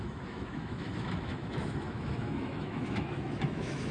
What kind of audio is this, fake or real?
fake